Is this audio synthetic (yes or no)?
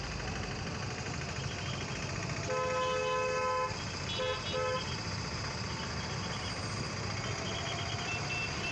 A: no